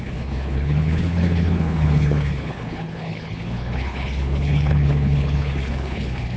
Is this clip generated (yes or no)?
yes